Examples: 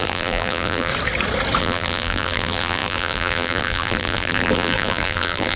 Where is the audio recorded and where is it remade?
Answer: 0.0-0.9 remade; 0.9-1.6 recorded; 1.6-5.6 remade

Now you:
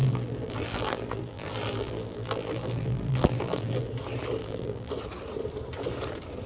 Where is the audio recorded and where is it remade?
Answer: 0.0-3.9 remade; 3.9-4.4 recorded; 4.4-4.9 remade; 4.9-6.5 recorded

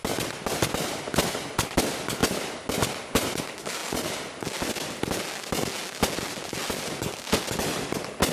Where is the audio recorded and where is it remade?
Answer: 0.0-8.3 recorded